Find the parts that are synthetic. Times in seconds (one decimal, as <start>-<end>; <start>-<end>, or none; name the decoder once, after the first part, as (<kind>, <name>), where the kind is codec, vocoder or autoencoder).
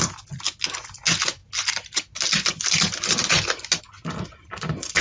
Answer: none